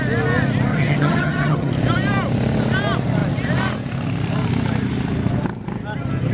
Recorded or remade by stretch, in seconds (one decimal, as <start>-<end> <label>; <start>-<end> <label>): 0.0-0.7 recorded; 0.7-1.7 remade; 1.7-6.3 recorded